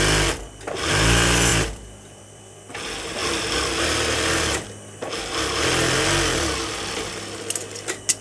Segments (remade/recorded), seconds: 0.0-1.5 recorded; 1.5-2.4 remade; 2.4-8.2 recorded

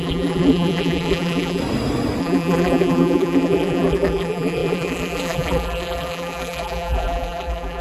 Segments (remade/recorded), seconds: 0.0-1.6 remade; 1.6-2.2 recorded; 2.2-7.8 remade

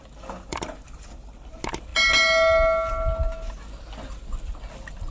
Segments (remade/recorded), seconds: 0.0-1.5 remade; 1.5-5.1 recorded

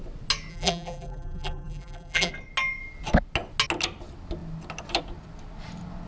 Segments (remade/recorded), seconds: 0.0-0.5 recorded; 0.5-2.3 remade; 2.3-6.1 recorded

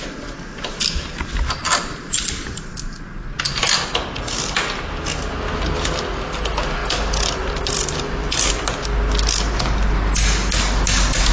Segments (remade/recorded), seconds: 0.0-11.3 recorded

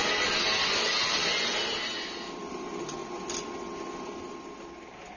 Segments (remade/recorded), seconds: 0.0-2.5 recorded; 2.5-3.0 remade; 3.0-5.2 recorded

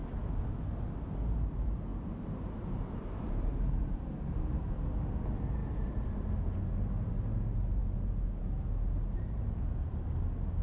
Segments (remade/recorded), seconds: 0.0-1.9 recorded; 1.9-4.7 remade; 4.7-5.6 recorded; 5.6-6.6 remade; 6.6-10.6 recorded